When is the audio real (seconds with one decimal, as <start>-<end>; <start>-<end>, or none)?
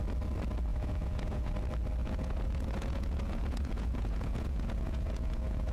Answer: 0.0-0.7; 1.5-2.0